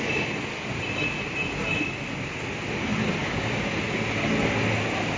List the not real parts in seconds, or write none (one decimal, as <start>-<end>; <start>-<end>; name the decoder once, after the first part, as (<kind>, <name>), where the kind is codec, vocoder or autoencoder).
3.2-3.7 (codec, DAC)